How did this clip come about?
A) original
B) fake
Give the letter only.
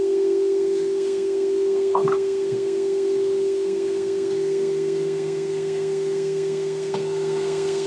B